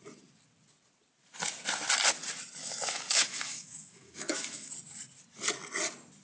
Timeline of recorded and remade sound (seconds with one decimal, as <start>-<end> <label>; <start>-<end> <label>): 0.0-2.6 recorded; 2.6-4.7 remade; 4.7-6.2 recorded